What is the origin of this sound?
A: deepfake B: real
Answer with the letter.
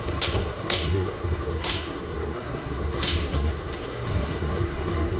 A